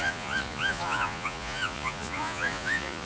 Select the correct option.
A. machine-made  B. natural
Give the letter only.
A